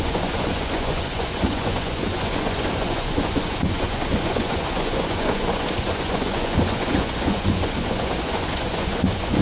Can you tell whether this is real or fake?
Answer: fake